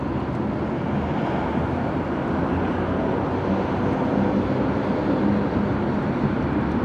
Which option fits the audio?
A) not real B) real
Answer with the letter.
B